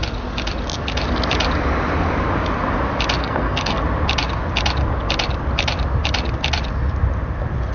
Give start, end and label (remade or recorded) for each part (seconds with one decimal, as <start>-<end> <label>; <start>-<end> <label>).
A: 0.0-3.2 recorded; 3.2-3.8 remade; 3.8-7.7 recorded